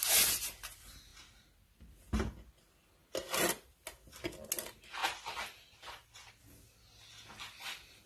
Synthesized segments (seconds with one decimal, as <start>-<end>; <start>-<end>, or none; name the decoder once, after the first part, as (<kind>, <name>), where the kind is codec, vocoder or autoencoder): none